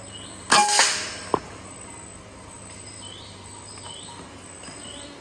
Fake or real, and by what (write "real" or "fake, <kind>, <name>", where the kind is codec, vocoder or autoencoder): real